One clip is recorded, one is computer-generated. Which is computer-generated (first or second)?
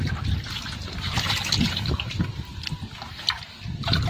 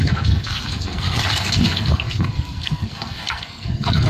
second